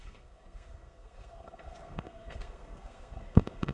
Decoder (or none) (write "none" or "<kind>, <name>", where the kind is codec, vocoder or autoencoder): codec, SNAC